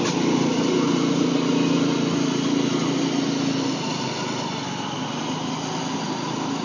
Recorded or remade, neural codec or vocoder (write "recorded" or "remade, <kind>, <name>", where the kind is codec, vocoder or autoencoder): recorded